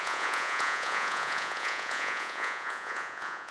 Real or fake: fake